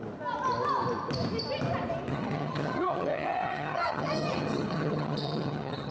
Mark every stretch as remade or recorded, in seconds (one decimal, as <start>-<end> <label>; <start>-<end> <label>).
0.0-2.1 recorded; 2.1-5.9 remade